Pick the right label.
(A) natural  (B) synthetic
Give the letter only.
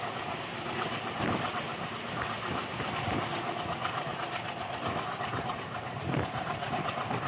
A